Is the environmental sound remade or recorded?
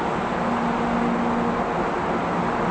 recorded